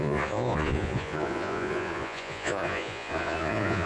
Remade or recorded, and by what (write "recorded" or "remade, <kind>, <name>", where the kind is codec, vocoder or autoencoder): remade, vocoder, Vocos